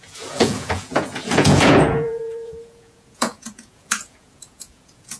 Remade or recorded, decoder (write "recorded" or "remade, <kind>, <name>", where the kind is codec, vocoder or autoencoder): remade, vocoder, Vocos